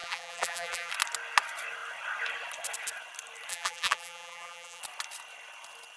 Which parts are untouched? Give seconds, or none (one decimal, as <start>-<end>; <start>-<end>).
0.9-3.5; 4.8-6.0